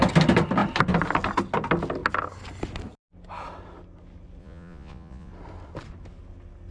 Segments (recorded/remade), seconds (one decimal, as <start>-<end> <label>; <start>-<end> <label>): 0.0-4.4 recorded; 4.4-5.3 remade; 5.3-6.7 recorded